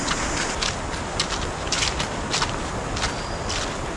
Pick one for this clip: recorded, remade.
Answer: recorded